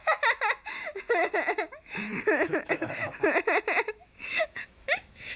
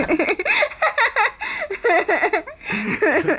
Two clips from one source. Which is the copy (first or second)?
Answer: first